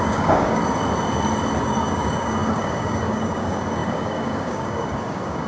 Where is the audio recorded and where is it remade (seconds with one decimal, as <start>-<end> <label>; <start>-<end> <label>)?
0.0-0.6 remade; 0.6-1.6 recorded; 1.6-5.5 remade